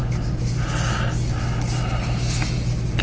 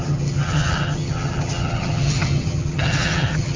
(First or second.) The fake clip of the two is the second